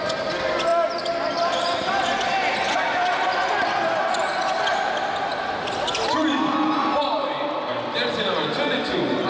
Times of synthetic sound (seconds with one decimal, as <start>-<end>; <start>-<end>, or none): none